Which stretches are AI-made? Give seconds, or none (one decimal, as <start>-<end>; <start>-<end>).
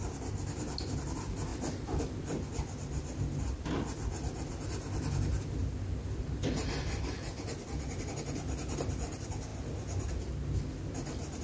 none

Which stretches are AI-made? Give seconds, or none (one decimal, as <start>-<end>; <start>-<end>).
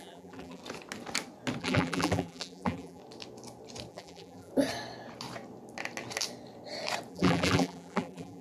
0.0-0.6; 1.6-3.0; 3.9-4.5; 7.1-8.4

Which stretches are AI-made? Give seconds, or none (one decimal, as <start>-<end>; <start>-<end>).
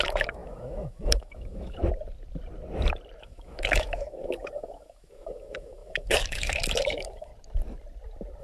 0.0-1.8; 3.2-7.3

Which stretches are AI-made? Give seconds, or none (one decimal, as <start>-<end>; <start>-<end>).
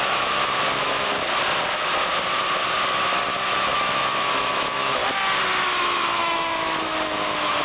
0.0-1.1; 3.5-5.0; 5.8-7.6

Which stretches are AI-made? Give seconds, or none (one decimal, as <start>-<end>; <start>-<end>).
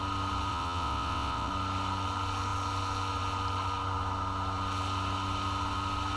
0.5-1.5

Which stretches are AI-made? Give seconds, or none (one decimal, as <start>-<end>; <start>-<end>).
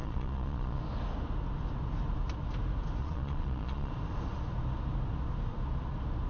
0.0-0.8; 3.0-3.9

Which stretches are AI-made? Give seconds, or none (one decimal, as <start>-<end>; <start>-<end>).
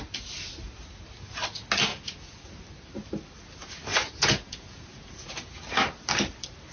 1.9-2.5; 3.9-5.6